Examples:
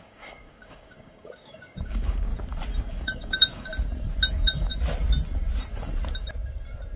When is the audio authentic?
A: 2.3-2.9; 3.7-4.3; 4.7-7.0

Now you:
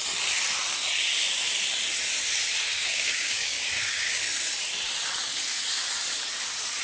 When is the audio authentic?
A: 0.0-2.7; 4.2-6.8